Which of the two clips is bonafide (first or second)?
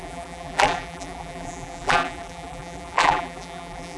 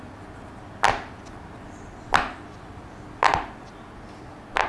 second